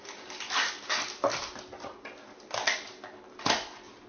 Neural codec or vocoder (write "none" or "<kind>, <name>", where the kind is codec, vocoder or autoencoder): none